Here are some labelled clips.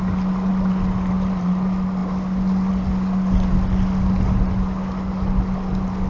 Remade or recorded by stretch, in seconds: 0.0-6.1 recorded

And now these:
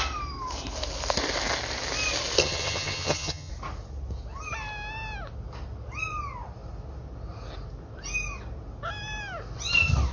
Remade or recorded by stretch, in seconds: 0.0-2.4 recorded; 2.4-3.5 remade; 3.5-10.1 recorded

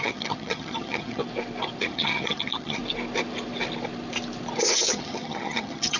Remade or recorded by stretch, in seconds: 0.0-1.2 remade; 1.2-1.8 recorded; 1.8-2.8 remade; 2.8-4.9 recorded; 4.9-6.0 remade